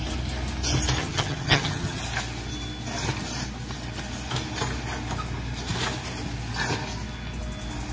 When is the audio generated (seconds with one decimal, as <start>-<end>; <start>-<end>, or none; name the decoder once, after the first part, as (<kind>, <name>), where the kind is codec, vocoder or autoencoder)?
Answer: 1.0-2.0 (vocoder, HiFi-GAN)